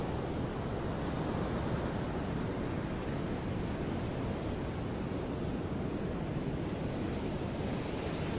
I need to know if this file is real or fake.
real